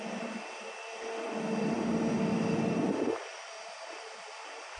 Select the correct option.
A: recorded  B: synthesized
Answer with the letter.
B